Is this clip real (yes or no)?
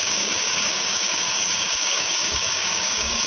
no